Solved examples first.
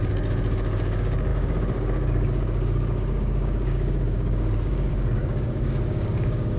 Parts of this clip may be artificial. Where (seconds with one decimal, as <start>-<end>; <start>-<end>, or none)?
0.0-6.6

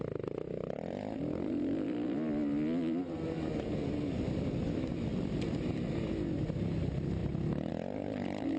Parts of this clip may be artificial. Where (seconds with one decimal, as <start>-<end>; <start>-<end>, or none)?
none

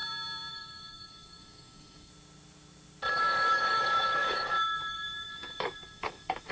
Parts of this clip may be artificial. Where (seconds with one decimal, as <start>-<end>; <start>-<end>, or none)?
0.5-2.1; 3.1-6.5